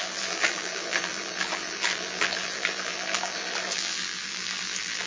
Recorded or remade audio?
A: remade